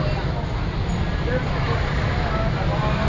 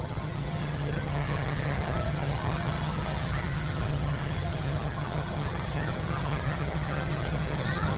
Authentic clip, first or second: first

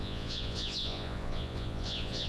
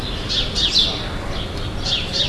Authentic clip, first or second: second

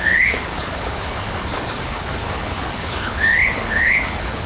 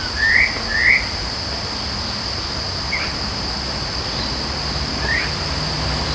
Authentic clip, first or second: second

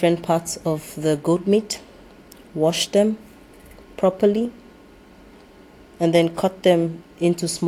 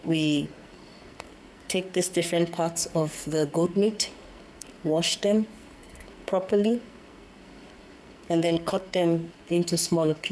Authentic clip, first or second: first